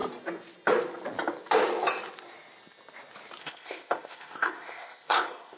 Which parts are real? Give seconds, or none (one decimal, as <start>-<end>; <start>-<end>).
0.0-3.4